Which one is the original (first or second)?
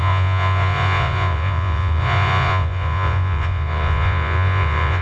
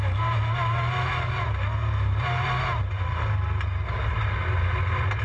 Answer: second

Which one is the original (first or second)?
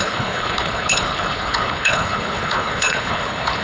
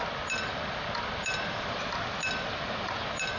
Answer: second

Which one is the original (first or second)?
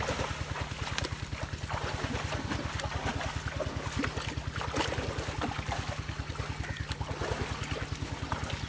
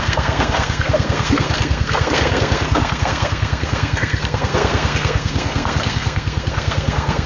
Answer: first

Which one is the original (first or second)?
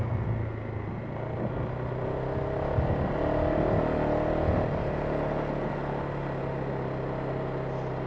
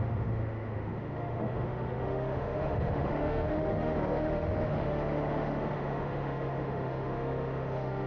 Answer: first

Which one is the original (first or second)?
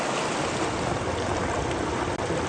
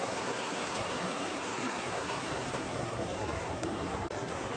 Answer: first